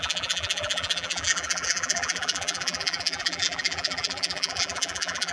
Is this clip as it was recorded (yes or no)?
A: no